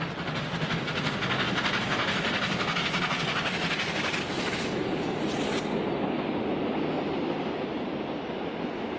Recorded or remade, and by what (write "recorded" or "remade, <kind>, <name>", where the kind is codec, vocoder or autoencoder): recorded